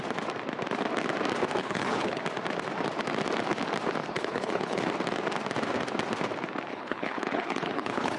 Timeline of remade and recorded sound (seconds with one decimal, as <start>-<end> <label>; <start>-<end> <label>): 0.0-1.6 recorded; 1.6-2.2 remade; 2.2-4.0 recorded; 4.0-4.8 remade; 4.8-6.7 recorded; 6.7-8.2 remade